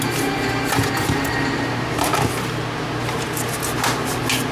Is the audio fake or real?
real